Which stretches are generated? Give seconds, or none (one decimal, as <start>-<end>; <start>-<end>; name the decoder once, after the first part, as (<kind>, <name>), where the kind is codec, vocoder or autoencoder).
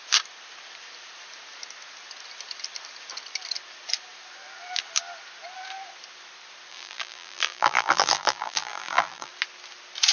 6.7-9.3 (vocoder, BigVGAN v2)